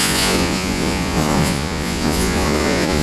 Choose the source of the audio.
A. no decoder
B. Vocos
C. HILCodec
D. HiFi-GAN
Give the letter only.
B